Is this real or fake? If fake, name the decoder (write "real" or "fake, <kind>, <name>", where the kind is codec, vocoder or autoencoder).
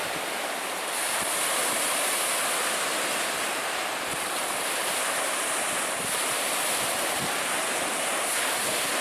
real